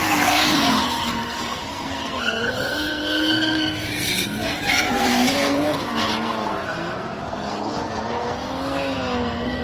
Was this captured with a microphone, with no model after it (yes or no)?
no